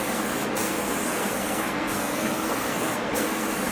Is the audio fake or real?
fake